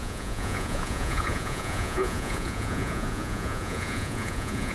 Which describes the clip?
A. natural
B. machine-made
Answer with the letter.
B